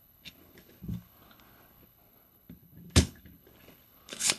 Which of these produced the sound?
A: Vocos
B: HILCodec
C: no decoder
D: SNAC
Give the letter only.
B